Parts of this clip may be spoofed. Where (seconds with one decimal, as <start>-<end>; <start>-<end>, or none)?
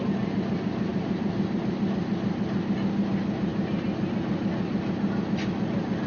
0.9-1.6; 3.5-4.1